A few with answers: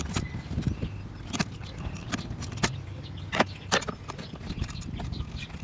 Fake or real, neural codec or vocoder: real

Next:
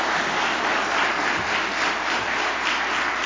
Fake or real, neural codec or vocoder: real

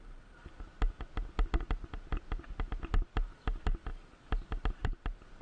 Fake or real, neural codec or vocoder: real